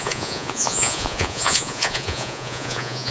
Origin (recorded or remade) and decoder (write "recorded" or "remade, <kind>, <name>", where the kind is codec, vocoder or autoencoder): remade, vocoder, Vocos